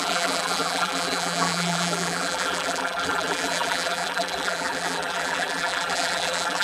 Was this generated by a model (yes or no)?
yes